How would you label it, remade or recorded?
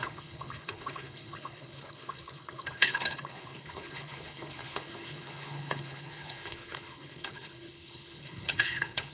remade